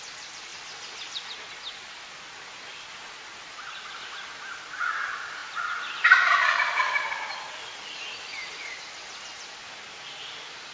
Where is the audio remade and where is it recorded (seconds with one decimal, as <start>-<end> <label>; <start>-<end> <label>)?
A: 0.0-9.6 remade; 9.6-10.7 recorded